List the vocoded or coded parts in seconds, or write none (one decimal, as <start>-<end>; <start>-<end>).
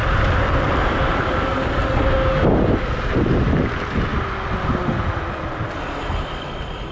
none